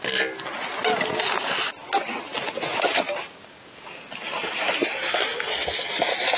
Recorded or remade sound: recorded